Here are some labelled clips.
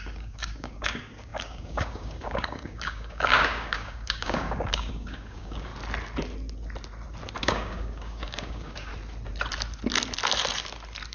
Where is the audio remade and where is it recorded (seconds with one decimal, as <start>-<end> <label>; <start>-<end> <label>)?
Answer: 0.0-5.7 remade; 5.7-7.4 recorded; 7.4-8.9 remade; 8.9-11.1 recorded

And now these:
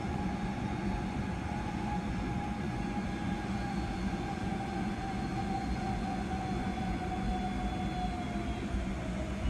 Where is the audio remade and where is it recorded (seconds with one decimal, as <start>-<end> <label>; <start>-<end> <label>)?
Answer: 0.0-7.3 remade; 7.3-8.6 recorded; 8.6-9.5 remade

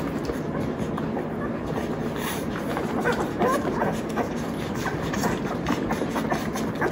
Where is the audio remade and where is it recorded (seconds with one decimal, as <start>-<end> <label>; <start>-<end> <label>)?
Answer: 0.0-2.0 recorded; 2.0-6.1 remade; 6.1-6.9 recorded